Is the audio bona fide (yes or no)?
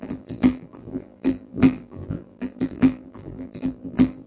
no